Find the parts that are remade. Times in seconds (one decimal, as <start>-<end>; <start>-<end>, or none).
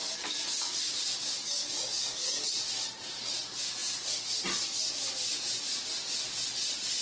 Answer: 0.0-0.8; 1.4-2.5